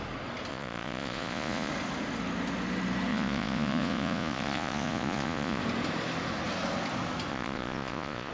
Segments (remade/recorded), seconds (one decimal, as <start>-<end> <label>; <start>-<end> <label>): 0.0-0.5 recorded; 0.5-1.7 remade; 1.7-3.1 recorded; 3.1-5.6 remade; 5.6-7.3 recorded; 7.3-8.3 remade